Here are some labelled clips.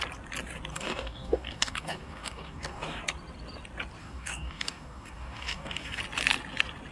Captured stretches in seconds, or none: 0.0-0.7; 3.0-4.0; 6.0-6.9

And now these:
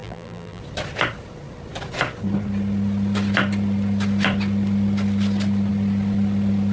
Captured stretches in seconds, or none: 0.6-6.7